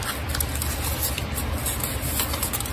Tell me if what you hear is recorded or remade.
recorded